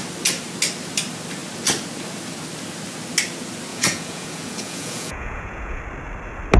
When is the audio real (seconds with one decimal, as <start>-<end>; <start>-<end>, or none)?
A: 0.0-3.7; 5.8-6.6